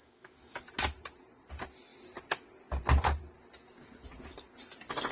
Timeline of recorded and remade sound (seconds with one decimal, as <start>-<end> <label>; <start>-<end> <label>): 0.0-0.6 remade; 0.6-5.1 recorded